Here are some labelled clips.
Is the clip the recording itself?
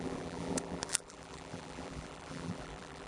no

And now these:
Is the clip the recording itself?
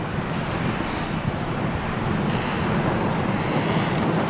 no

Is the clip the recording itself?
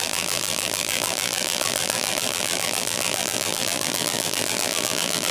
no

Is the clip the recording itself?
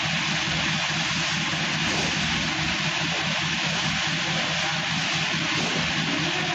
yes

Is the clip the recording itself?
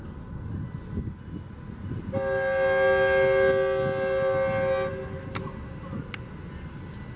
yes